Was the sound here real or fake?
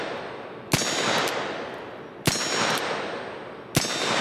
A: real